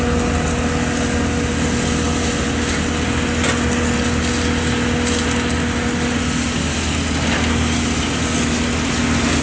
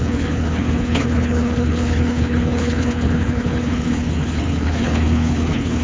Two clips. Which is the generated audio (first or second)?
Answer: second